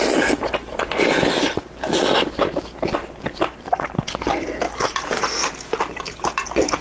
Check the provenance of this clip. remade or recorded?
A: recorded